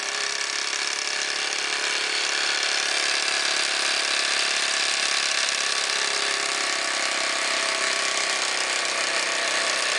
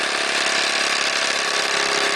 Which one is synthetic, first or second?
first